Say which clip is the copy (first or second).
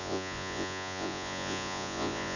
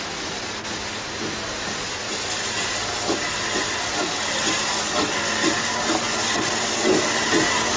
first